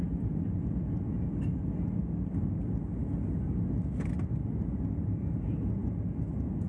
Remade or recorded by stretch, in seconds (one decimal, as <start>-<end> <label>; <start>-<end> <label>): 0.0-6.7 recorded